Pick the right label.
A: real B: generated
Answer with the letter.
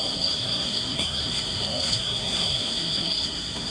B